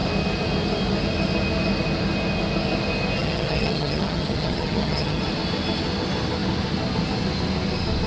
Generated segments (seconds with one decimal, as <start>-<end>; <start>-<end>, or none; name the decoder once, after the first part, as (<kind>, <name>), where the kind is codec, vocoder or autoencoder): 3.2-5.2 (vocoder, HiFi-GAN)